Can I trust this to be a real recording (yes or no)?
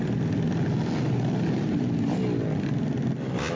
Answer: yes